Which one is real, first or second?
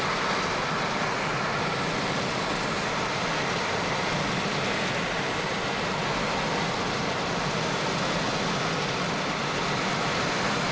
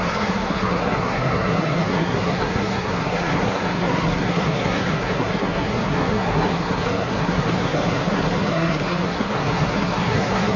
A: first